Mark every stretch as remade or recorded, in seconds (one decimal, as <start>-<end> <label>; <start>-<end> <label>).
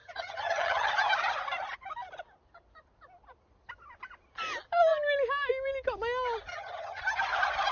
0.0-0.9 remade; 0.9-6.5 recorded; 6.5-7.0 remade; 7.0-7.7 recorded